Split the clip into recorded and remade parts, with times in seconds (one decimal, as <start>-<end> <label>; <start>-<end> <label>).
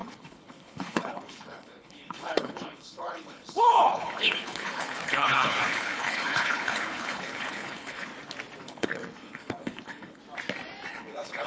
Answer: 0.0-8.1 remade; 8.1-8.6 recorded; 8.6-10.2 remade; 10.2-10.9 recorded; 10.9-11.5 remade